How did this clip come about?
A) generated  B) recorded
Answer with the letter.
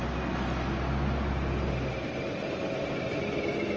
B